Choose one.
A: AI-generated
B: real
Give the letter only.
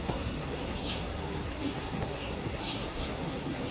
A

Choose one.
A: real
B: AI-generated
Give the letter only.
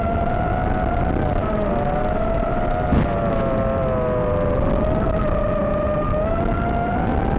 A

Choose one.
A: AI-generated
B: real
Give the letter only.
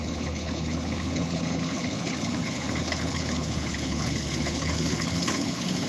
A